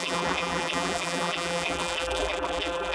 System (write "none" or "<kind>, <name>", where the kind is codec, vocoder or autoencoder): vocoder, BigVGAN v2